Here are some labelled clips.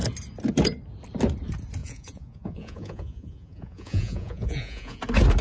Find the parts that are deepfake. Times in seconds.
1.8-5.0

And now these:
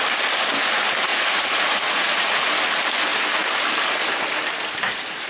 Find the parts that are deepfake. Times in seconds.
1.1-2.5

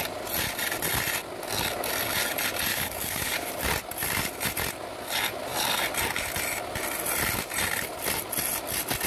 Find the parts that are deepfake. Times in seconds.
2.7-3.5

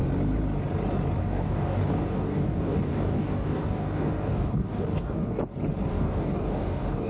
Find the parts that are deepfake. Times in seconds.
1.2-5.4; 5.9-7.1

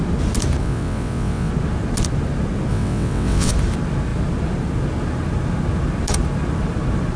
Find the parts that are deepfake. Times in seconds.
0.6-1.5; 2.7-3.5

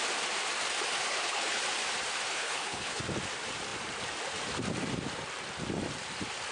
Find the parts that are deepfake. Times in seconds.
1.1-1.6; 2.3-3.0